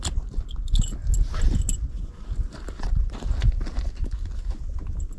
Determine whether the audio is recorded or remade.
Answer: recorded